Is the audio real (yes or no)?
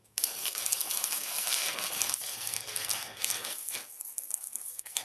no